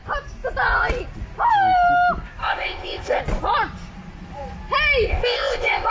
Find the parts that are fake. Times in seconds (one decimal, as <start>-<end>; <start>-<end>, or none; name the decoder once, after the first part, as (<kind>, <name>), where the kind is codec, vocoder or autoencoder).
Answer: 2.4-3.2 (codec, ZipCodec); 5.1-5.9